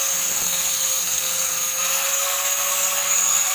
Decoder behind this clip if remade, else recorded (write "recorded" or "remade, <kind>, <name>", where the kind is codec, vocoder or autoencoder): remade, codec, SNAC